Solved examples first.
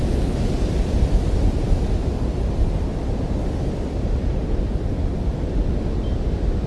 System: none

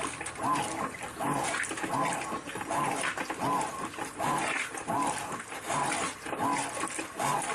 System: none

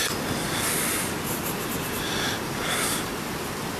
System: none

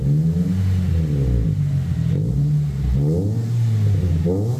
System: none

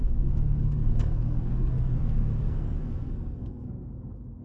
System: codec, SNAC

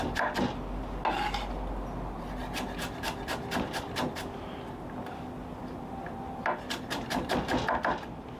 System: none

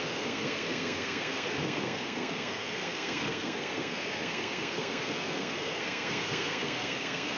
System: codec, SNAC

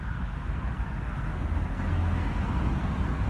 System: codec, SNAC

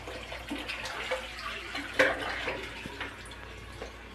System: none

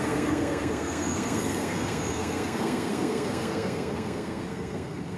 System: codec, SNAC